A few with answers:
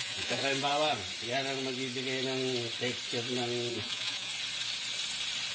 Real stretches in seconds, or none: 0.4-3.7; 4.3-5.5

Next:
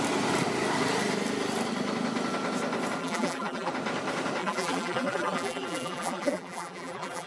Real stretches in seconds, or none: 0.0-3.0; 3.7-4.4